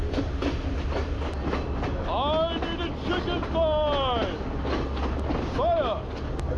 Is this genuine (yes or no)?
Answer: yes